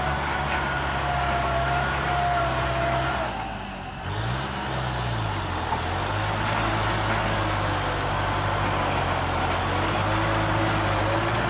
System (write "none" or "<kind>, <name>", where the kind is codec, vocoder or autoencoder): none